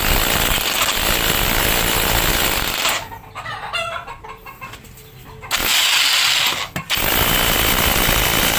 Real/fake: real